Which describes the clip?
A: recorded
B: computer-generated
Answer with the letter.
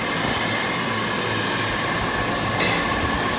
A